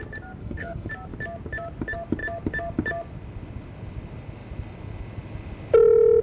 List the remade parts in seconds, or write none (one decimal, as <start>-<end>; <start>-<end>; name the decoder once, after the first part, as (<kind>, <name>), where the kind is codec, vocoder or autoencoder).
0.4-0.9 (codec, SNAC)